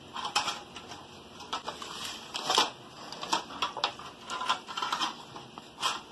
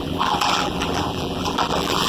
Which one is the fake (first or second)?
second